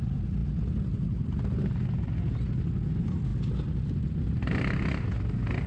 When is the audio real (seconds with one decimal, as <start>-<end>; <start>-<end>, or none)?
0.0-5.7